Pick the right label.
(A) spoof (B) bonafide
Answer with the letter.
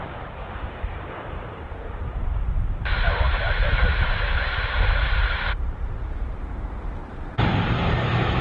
A